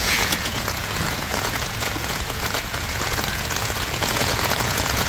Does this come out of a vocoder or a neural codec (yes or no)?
yes